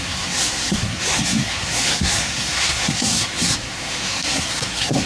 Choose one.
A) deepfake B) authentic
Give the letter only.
A